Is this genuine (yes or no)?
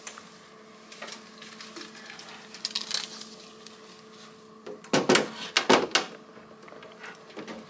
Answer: yes